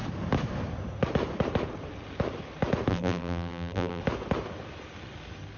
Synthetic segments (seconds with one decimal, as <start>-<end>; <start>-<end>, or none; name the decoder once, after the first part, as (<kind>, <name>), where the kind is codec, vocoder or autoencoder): 2.9-4.0 (vocoder, BigVGAN v2)

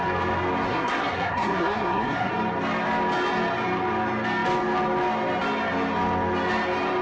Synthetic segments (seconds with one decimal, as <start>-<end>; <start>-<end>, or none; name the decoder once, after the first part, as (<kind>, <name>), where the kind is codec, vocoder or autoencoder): 0.7-2.3 (codec, SNAC)

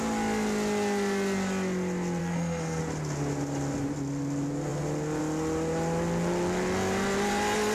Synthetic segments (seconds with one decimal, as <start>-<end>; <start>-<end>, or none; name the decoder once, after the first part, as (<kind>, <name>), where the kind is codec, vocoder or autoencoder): 2.2-2.8 (codec, SNAC)

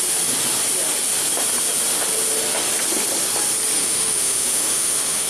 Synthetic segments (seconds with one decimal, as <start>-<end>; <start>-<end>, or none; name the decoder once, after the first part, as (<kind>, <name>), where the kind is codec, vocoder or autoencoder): 3.8-5.3 (autoencoder, DAC-VAE)

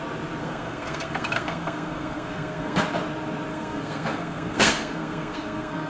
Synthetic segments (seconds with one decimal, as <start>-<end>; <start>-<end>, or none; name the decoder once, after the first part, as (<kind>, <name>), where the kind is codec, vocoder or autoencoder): 0.4-2.8 (codec, SNAC); 3.5-5.9

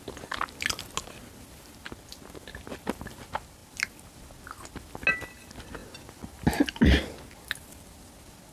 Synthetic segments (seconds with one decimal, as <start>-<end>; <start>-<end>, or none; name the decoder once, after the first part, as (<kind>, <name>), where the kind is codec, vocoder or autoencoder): none

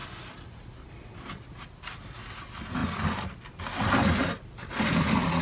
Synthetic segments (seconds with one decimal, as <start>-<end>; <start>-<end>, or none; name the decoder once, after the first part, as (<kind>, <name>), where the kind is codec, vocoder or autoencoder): none